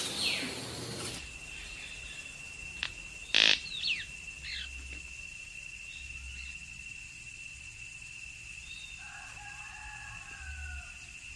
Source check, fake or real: real